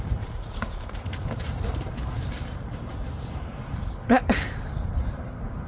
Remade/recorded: remade